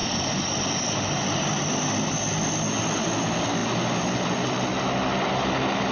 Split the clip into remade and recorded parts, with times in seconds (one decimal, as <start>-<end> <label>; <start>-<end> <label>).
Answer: 0.0-5.9 recorded